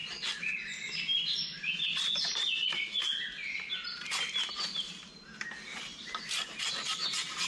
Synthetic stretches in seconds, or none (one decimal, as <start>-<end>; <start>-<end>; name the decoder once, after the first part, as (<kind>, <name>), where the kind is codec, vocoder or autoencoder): none